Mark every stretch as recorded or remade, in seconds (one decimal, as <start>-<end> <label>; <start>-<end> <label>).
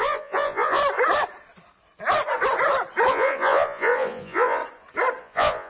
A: 0.0-0.8 remade; 0.8-3.1 recorded; 3.1-4.6 remade; 4.6-5.2 recorded; 5.2-5.7 remade